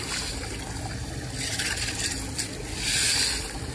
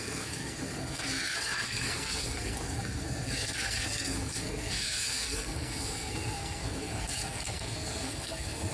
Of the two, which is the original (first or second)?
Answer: first